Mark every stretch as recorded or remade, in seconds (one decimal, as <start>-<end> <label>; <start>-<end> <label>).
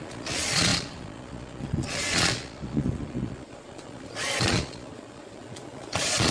0.0-6.3 remade